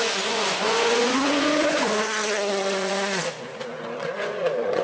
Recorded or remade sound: remade